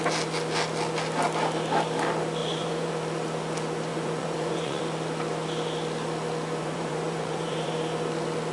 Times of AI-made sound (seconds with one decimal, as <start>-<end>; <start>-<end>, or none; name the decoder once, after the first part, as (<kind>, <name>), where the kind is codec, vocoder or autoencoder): 2.4-2.9 (vocoder, Vocos); 3.9-4.8; 6.6-7.7